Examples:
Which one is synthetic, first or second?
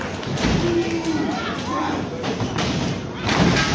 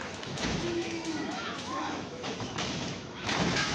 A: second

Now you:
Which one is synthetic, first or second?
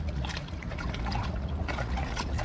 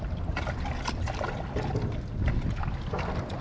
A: first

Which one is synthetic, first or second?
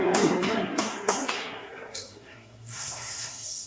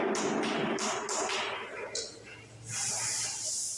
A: first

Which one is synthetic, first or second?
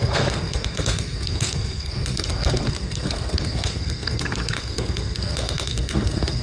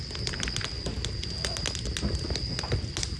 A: first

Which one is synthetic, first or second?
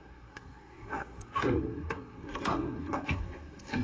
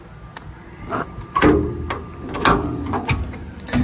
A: first